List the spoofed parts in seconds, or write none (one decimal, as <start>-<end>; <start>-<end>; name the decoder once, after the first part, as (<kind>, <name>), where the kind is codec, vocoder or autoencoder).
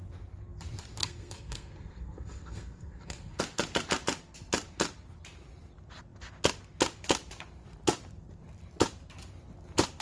1.0-3.4 (codec, SNAC)